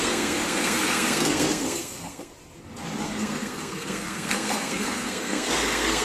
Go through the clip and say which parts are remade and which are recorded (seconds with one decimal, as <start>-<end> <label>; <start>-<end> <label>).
0.0-2.3 remade; 2.3-3.0 recorded; 3.0-6.0 remade